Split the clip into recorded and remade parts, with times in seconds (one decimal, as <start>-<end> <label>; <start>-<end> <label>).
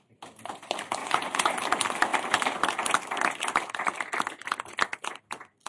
0.0-1.0 recorded; 1.0-1.5 remade; 1.5-5.7 recorded